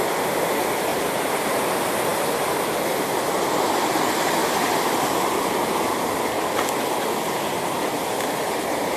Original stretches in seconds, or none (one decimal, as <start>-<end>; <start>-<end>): 0.0-0.9; 1.7-4.4; 6.7-9.0